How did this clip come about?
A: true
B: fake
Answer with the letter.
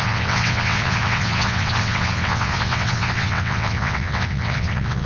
B